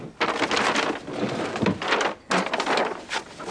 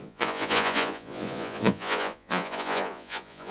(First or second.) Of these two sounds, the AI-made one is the second